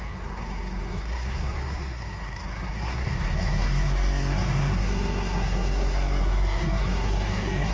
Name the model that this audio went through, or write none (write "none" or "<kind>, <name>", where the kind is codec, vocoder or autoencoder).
codec, SNAC